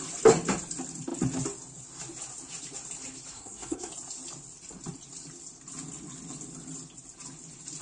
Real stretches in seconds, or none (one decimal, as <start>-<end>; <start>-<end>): 0.0-3.3; 3.9-7.8